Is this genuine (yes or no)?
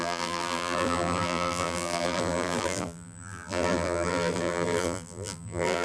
no